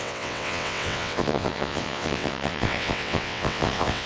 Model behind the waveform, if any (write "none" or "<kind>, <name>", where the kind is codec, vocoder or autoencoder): vocoder, WaveNeXt